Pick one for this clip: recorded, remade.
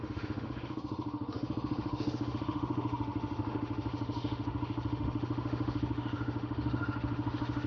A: remade